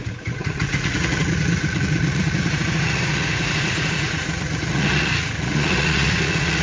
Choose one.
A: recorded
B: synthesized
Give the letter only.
B